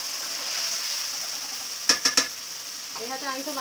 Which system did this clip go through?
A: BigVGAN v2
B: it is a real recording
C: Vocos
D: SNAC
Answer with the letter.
B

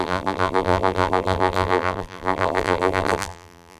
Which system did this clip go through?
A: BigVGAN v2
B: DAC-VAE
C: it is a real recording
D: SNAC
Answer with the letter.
A